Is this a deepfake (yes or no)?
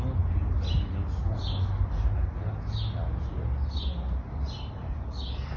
no